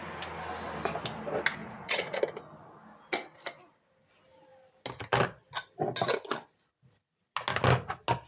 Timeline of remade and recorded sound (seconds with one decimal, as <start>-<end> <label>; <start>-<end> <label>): 0.0-1.6 recorded; 1.6-2.2 remade; 2.2-8.3 recorded